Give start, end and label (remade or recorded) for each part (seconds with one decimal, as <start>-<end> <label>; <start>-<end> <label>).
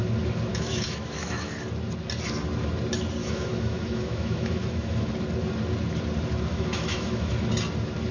0.0-0.5 recorded; 0.5-1.5 remade; 1.5-3.2 recorded; 3.2-5.1 remade; 5.1-6.5 recorded; 6.5-7.3 remade; 7.3-8.1 recorded